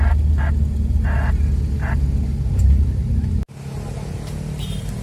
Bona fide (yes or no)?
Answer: yes